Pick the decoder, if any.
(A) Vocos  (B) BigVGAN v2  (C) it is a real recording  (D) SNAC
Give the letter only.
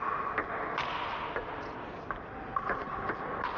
C